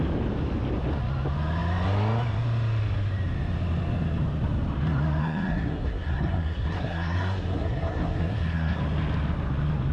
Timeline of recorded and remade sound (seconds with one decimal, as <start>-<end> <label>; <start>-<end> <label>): 0.0-5.2 recorded; 5.2-8.8 remade; 8.8-9.9 recorded